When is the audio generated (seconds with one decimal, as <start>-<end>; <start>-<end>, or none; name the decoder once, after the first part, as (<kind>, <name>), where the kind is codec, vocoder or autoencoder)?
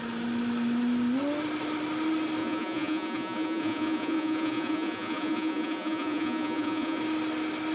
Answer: 2.4-7.0 (vocoder, Vocos)